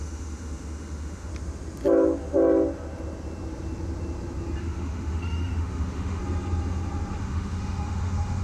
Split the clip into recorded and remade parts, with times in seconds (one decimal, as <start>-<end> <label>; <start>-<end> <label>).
0.0-1.3 remade; 1.3-4.6 recorded; 4.6-6.2 remade; 6.2-7.2 recorded; 7.2-8.4 remade